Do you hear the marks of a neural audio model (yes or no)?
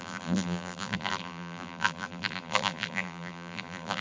yes